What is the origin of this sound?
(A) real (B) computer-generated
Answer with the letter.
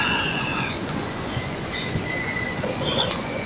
B